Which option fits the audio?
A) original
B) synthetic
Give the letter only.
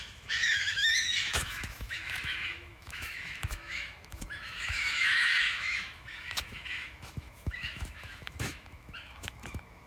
B